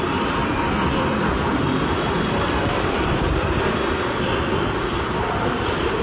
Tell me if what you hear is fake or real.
fake